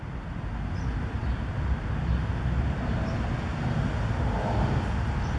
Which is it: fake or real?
real